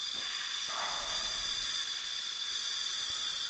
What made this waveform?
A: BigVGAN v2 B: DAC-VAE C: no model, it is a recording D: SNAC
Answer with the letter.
A